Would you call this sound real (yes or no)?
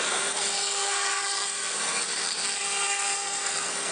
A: no